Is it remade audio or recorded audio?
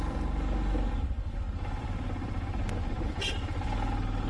remade